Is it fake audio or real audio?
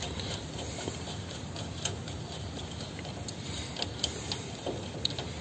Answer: real